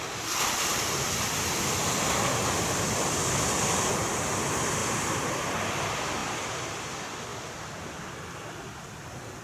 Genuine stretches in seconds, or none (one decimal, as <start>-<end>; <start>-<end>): 0.0-0.7; 3.9-4.8; 5.3-6.2; 6.7-7.3; 8.1-9.4